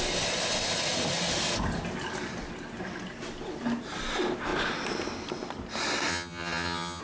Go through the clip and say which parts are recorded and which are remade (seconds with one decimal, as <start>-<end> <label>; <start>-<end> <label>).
0.0-6.1 recorded; 6.1-7.0 remade